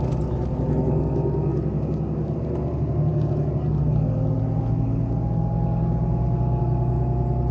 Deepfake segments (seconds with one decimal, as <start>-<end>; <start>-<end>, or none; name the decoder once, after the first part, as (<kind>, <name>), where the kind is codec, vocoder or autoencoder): none